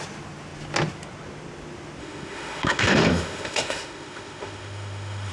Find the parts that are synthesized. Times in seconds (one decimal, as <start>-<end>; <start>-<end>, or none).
2.0-5.3

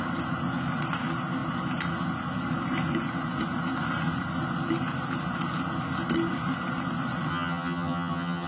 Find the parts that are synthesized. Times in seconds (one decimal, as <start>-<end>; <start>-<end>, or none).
7.3-8.5

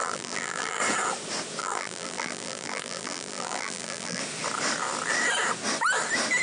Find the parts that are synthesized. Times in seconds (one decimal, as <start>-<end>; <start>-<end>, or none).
0.0-0.8; 1.6-4.2

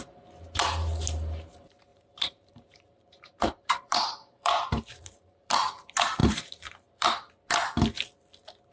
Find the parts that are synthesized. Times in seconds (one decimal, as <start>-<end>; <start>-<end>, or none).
1.9-5.5; 6.2-7.3

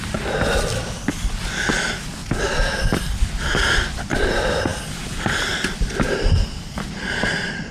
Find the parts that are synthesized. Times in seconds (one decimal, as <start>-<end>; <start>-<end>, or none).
0.8-2.2; 4.3-7.7

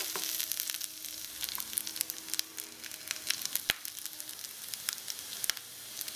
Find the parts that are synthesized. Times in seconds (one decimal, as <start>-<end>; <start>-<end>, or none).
none

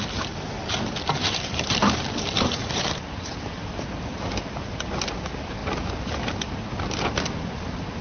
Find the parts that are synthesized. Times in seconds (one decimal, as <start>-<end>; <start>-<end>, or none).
1.2-2.9